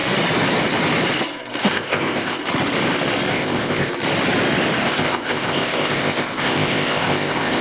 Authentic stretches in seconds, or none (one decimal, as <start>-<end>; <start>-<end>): 0.0-1.6; 2.4-3.3; 3.9-4.8